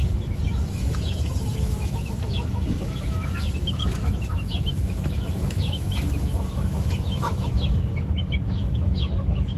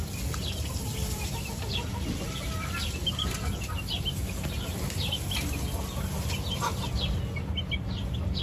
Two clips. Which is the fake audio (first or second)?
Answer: first